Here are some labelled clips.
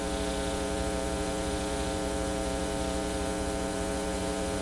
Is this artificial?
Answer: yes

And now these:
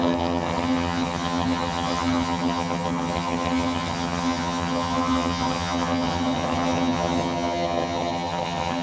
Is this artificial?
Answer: yes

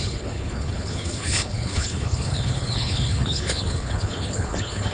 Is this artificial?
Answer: yes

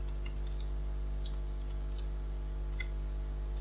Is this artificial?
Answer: no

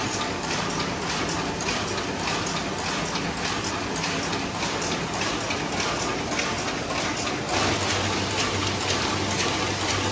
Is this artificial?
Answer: no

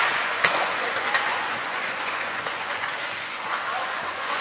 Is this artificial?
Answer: yes